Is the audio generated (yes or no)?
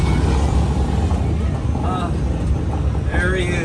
no